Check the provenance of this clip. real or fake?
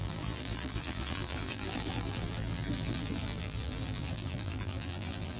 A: fake